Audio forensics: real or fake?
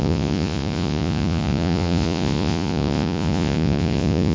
fake